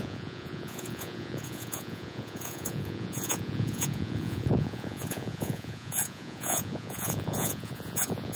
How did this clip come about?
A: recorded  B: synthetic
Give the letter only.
B